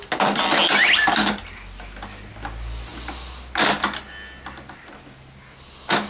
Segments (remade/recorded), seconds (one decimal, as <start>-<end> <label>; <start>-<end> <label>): 0.0-6.1 recorded